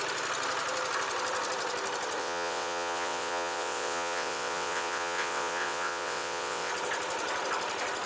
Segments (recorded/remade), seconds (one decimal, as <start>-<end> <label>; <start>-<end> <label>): 0.0-2.2 recorded; 2.2-6.7 remade; 6.7-8.1 recorded